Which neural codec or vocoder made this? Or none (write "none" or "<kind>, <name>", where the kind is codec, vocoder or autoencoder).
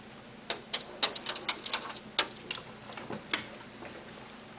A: none